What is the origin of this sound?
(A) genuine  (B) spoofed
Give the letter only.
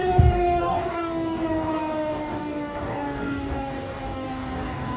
B